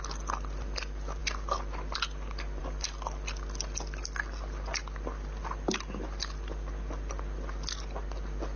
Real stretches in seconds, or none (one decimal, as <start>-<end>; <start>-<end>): 0.0-8.6